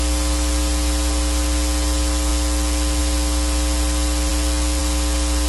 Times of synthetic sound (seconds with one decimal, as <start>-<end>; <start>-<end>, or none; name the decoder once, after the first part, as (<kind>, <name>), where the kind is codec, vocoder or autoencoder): none